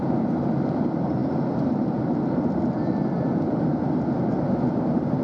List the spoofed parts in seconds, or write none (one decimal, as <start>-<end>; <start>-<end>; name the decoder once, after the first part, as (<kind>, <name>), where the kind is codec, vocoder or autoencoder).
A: 1.2-4.3 (vocoder, BigVGAN v2)